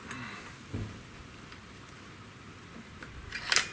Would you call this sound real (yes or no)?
yes